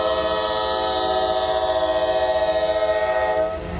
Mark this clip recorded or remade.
recorded